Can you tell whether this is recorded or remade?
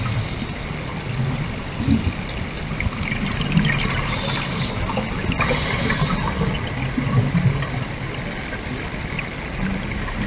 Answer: recorded